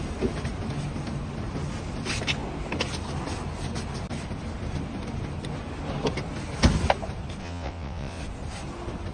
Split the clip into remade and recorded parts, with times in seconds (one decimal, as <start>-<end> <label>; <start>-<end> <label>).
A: 0.0-7.4 recorded; 7.4-8.2 remade; 8.2-9.1 recorded